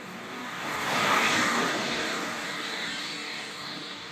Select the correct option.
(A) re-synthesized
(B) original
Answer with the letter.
A